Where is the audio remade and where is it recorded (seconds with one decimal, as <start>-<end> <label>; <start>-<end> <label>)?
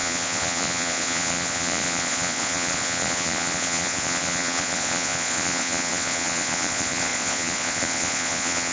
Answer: 0.0-8.7 remade